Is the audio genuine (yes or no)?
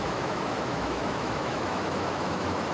no